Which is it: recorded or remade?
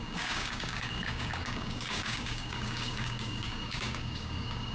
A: remade